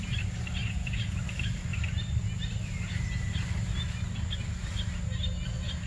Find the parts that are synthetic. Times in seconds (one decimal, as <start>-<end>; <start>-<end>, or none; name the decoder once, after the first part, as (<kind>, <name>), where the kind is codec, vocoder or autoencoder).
0.6-1.2 (vocoder, Vocos)